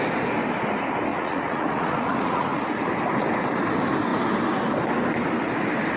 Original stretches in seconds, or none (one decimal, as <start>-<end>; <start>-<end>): 0.0-1.1; 2.6-6.0